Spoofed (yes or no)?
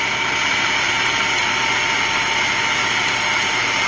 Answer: no